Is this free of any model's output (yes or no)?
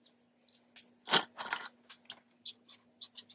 yes